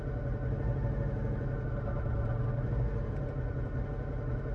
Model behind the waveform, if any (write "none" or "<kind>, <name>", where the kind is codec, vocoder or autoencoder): none